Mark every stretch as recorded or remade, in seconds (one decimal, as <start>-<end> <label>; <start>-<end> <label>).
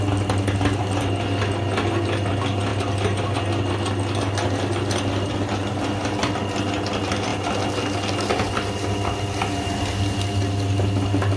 0.0-11.4 recorded